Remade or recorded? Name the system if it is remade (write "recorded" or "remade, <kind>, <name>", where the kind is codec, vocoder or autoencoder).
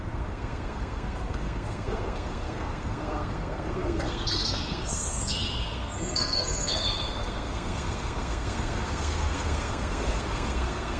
remade, codec, SNAC